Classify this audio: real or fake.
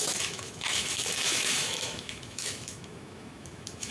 fake